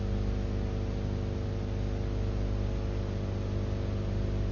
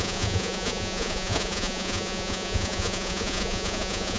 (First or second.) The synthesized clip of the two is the second